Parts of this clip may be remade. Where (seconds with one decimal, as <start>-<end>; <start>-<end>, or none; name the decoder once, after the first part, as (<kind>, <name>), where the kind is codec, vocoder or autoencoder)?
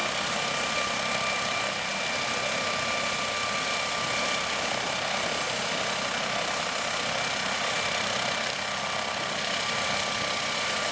none